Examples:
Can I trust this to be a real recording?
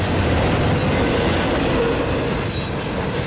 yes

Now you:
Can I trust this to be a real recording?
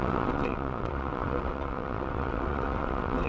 no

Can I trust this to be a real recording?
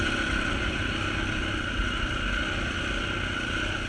yes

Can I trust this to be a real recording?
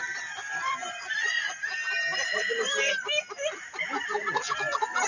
yes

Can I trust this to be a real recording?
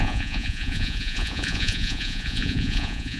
no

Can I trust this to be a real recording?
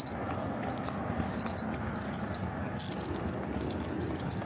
yes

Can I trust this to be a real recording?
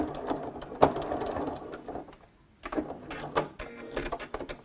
yes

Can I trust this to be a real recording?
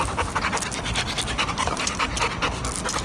yes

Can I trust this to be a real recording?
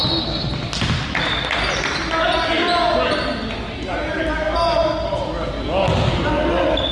yes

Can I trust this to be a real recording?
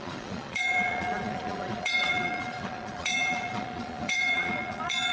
no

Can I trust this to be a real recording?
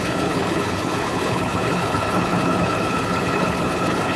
no